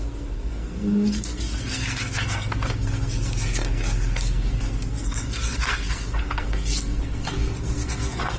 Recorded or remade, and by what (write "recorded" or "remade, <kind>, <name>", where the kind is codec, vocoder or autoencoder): remade, codec, SNAC